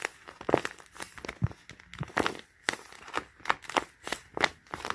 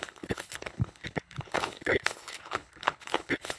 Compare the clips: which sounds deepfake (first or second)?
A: second